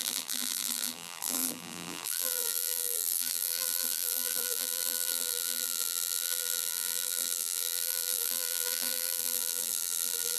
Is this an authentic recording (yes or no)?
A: no